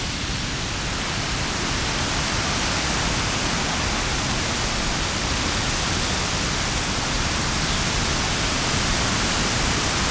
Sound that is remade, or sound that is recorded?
recorded